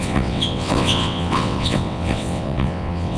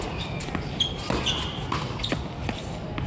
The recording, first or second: second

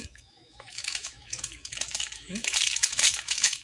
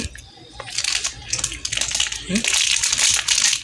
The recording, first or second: second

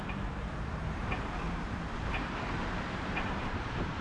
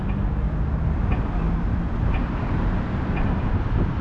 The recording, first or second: second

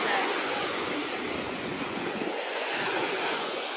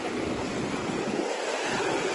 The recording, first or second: second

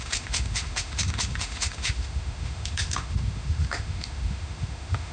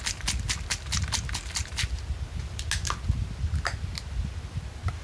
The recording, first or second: second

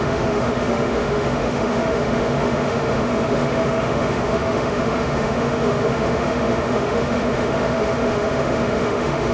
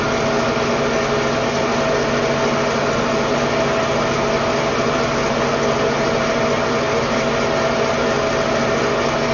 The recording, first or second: second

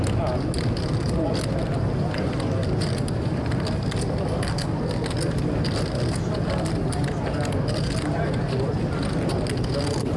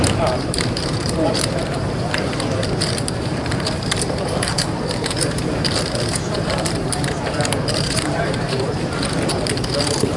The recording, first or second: first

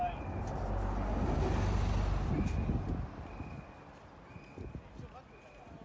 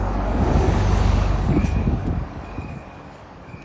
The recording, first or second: first